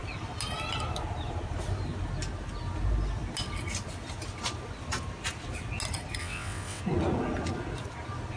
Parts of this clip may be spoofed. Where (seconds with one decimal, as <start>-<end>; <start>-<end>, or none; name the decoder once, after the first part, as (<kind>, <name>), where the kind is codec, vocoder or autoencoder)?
6.2-6.8 (vocoder, WaveNeXt)

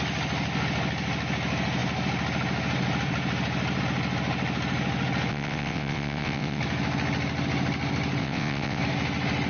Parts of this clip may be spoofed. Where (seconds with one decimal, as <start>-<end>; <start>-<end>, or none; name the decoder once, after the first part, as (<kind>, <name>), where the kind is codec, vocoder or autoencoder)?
5.3-6.6 (vocoder, WaveNeXt); 8.2-8.8